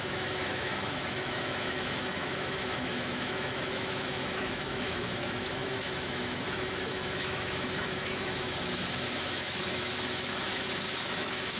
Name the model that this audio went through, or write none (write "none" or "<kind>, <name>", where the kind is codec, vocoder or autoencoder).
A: autoencoder, DAC-VAE